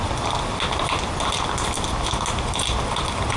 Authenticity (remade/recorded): recorded